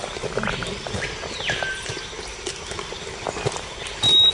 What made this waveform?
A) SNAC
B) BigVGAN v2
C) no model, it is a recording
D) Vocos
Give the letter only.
C